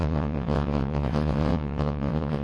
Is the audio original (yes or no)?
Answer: no